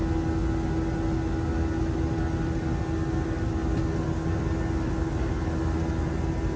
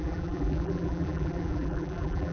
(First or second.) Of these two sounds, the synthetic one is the second